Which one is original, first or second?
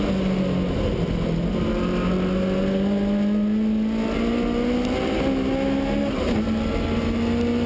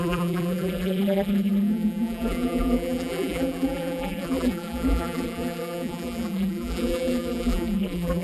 first